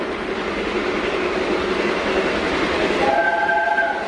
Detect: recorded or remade recorded